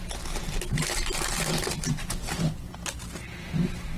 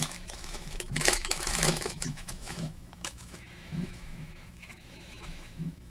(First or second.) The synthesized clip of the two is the second